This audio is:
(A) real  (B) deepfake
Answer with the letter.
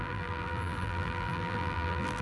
B